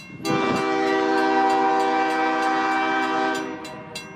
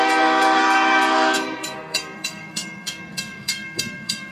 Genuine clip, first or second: first